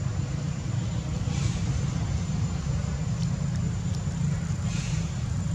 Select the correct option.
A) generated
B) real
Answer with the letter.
A